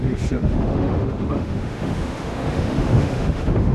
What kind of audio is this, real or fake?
fake